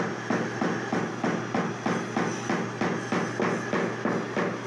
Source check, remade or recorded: recorded